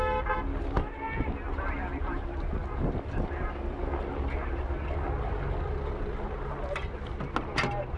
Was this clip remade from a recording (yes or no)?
no